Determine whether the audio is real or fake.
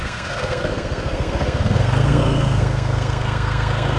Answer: fake